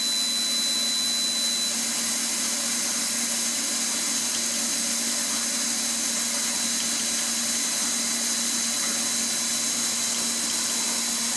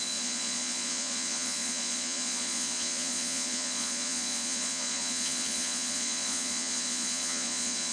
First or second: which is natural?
first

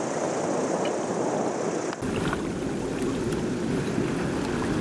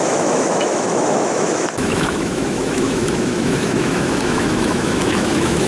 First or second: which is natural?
first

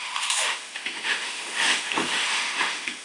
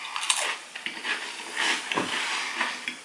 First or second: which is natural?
second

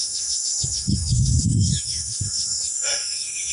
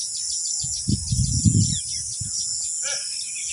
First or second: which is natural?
second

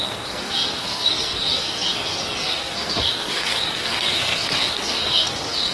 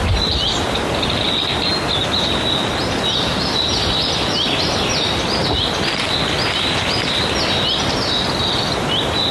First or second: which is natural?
second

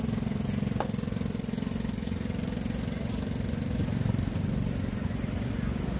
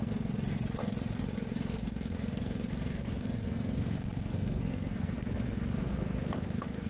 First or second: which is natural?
first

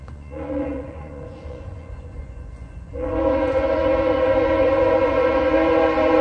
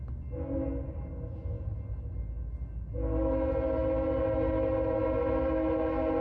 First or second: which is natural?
second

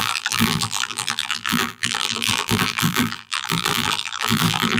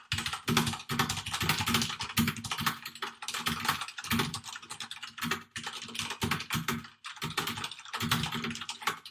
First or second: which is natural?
second